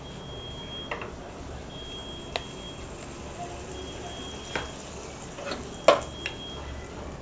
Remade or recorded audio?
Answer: recorded